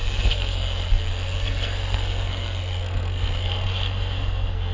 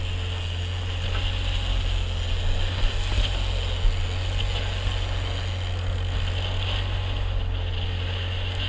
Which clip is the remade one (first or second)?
first